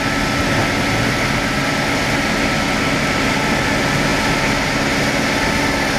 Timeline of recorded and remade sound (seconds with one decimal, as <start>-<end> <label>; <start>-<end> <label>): 0.0-6.0 recorded